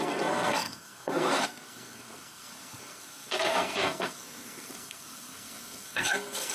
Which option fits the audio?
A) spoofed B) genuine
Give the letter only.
A